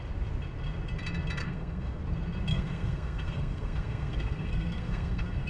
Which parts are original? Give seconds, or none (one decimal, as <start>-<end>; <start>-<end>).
0.0-1.4; 2.0-2.5